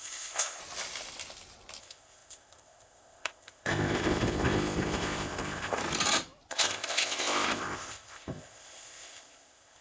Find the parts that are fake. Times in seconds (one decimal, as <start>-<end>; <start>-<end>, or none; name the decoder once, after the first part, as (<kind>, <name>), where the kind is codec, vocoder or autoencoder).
0.0-0.6 (codec, ZipCodec); 1.8-5.8; 6.5-9.8